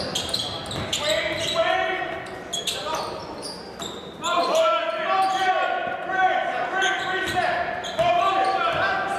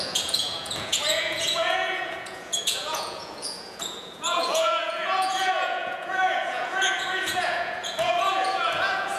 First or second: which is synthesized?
second